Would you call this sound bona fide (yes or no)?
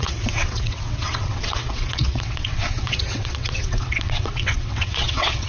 no